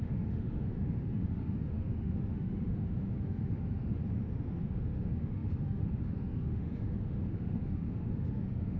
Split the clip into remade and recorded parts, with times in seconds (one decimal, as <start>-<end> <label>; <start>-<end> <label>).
0.0-4.0 remade; 4.0-4.6 recorded; 4.6-8.8 remade